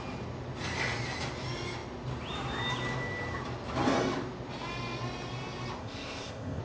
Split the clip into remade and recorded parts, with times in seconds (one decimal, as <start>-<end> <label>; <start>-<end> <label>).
0.0-5.8 recorded; 5.8-6.6 remade